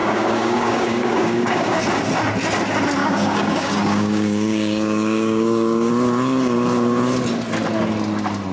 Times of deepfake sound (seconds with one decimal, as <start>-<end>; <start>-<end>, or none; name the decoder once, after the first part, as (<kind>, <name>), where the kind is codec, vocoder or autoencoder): 0.0-1.8 (codec, DAC); 3.0-5.9